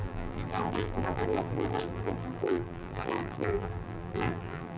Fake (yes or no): yes